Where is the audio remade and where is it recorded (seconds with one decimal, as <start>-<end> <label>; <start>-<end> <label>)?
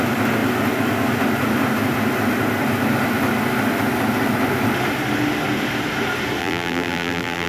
0.0-6.4 recorded; 6.4-7.5 remade